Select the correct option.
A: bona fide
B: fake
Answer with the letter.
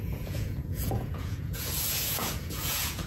B